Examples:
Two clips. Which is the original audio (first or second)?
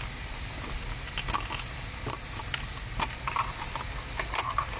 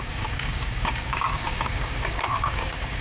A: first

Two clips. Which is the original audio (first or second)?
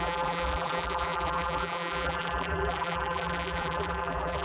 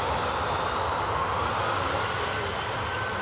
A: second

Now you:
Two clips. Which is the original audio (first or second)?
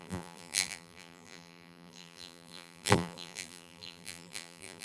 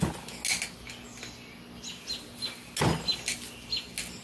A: second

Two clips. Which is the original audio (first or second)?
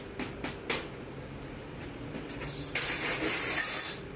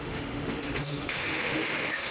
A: first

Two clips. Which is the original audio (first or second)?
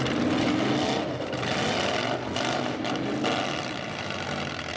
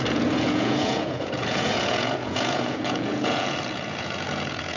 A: first